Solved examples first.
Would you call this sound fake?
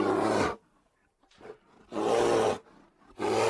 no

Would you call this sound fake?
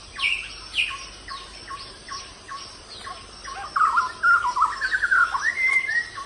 no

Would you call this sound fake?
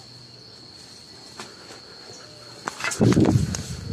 no